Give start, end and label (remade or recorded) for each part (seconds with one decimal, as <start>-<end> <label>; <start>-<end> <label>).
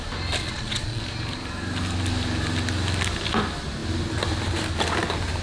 0.0-0.4 recorded; 0.4-1.0 remade; 1.0-5.4 recorded